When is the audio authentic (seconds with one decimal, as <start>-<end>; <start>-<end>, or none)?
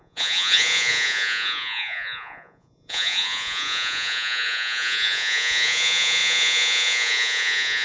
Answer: none